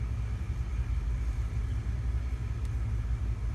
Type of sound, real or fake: real